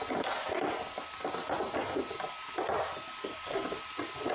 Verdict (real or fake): real